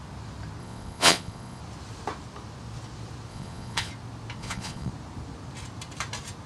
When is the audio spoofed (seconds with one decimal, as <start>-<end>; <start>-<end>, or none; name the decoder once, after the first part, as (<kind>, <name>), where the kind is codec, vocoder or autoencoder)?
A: 0.6-1.6 (vocoder, Vocos); 3.3-3.9; 4.4-4.9